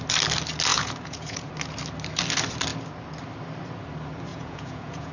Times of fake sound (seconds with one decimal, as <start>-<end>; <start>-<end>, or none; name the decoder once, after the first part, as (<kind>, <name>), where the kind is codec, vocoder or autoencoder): 0.7-1.5 (vocoder, Vocos); 4.3-5.1